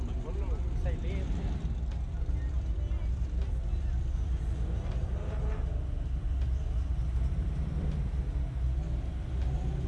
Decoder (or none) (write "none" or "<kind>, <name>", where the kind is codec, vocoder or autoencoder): none